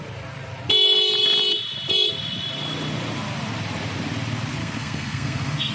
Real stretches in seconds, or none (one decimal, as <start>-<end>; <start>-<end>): 0.0-4.6